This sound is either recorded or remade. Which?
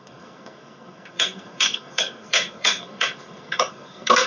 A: remade